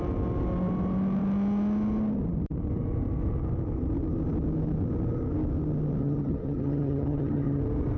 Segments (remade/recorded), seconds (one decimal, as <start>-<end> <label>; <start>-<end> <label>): 0.0-6.0 recorded; 6.0-7.6 remade; 7.6-8.0 recorded